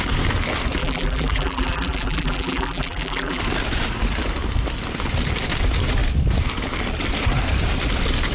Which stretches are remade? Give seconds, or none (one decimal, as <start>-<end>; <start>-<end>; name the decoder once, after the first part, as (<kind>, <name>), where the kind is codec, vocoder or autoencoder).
0.8-3.4 (vocoder, BigVGAN v2)